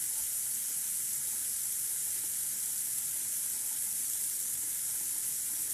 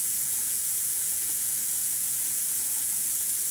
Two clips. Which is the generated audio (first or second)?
second